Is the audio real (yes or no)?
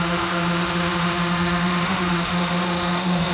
no